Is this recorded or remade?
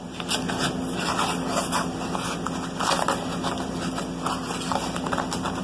recorded